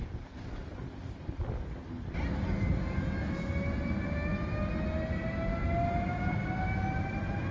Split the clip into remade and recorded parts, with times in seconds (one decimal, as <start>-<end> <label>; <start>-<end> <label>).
0.0-7.5 recorded